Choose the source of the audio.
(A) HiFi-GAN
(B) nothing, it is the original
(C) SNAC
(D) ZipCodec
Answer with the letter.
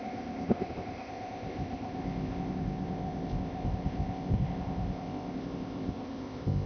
D